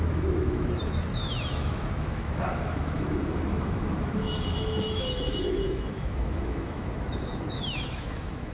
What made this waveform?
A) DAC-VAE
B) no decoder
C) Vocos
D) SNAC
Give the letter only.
A